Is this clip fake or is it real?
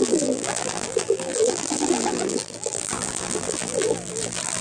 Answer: fake